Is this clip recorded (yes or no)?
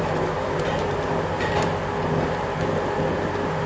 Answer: yes